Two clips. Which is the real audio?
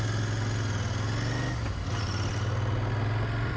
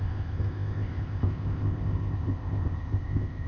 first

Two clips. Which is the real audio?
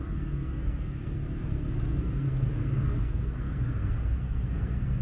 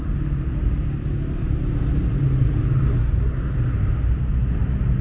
second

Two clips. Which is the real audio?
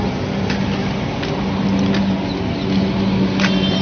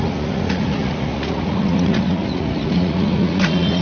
first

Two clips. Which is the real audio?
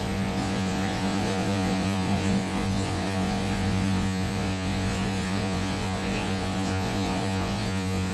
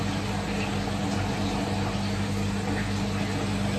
second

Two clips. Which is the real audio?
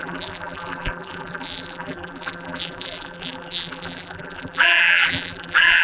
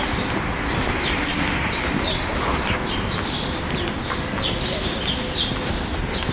second